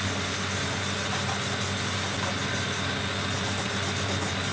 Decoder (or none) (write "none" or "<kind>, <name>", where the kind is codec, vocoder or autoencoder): none